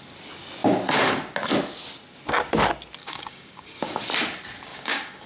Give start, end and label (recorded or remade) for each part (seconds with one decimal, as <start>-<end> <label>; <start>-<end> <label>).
0.0-3.0 recorded; 3.0-4.0 remade; 4.0-4.7 recorded; 4.7-5.3 remade